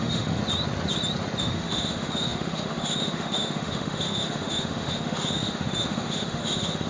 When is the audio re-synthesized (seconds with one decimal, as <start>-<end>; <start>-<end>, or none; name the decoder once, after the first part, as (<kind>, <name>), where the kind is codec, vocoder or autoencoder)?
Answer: 0.0-0.4 (autoencoder, DAC-VAE); 1.4-6.9

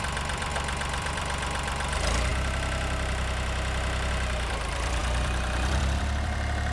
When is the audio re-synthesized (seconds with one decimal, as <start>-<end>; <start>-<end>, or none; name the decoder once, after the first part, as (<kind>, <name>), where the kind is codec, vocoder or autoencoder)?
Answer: 0.0-2.3 (vocoder, BigVGAN v2); 4.1-6.7

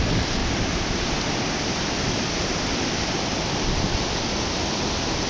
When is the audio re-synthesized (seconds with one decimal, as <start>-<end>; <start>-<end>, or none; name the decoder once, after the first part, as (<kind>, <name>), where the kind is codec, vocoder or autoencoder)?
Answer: 0.4-2.6 (vocoder, BigVGAN v2)